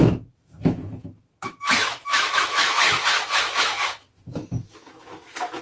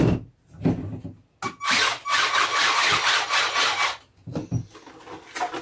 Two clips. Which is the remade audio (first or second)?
first